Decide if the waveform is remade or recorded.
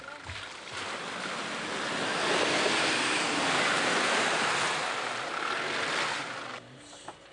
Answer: recorded